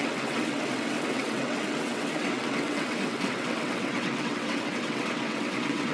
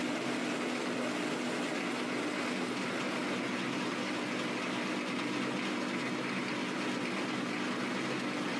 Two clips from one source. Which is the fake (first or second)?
first